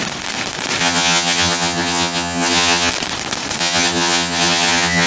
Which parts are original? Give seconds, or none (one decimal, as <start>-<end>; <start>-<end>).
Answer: 0.0-0.8; 2.9-3.6